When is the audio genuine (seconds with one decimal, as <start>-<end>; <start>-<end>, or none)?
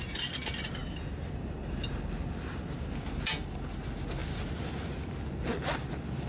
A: 0.0-6.3